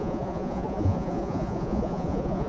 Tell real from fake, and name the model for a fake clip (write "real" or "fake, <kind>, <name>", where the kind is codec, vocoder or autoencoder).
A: fake, vocoder, Vocos